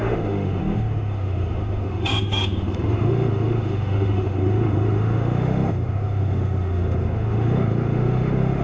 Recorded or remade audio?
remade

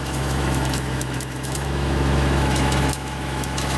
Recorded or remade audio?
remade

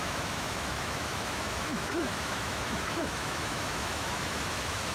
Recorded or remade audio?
remade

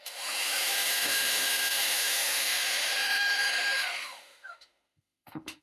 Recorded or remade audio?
remade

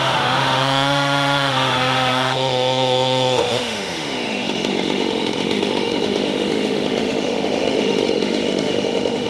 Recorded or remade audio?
remade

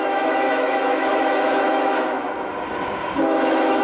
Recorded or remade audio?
remade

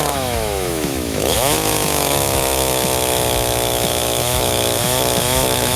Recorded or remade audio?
remade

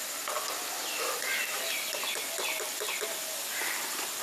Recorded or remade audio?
recorded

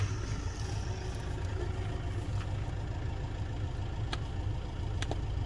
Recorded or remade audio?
recorded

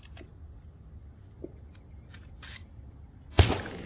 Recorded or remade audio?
recorded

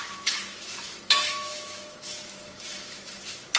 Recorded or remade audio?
remade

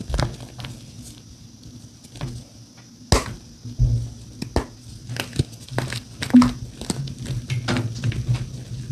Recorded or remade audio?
recorded